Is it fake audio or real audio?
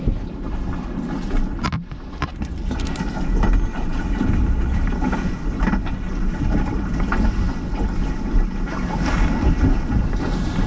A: real